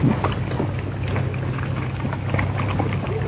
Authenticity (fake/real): real